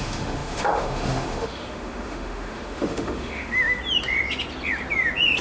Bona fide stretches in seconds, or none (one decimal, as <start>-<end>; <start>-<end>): 3.8-5.4